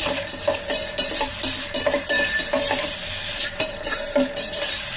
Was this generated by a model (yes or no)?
yes